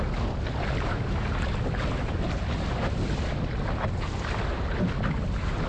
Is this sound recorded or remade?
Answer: recorded